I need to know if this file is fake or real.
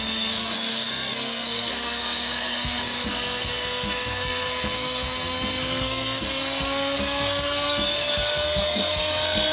fake